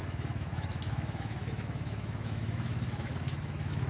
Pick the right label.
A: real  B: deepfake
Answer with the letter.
B